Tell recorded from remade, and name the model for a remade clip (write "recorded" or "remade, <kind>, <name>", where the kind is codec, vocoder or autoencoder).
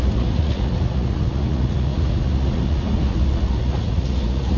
remade, vocoder, Vocos